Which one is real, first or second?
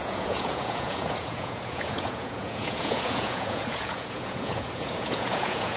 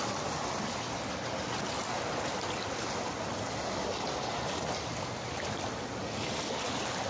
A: second